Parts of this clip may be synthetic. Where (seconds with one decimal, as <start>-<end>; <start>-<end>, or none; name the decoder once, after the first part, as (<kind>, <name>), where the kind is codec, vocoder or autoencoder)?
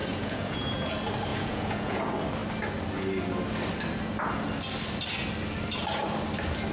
0.0-0.9 (vocoder, Vocos); 1.3-2.0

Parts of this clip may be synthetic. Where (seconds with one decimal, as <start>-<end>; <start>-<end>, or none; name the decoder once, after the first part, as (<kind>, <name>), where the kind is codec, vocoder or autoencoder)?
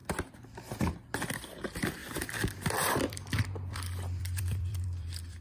0.0-0.8 (vocoder, BigVGAN v2); 2.0-5.4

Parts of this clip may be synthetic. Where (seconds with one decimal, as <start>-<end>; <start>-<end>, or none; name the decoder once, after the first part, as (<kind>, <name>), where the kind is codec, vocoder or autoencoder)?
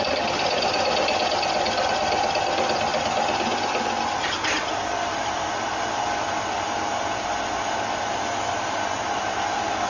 none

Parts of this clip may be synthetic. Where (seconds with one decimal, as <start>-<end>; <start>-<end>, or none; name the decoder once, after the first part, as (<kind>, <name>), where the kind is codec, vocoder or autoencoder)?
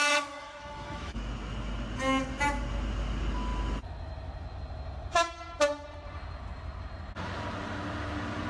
0.0-1.3 (autoencoder, DAC-VAE)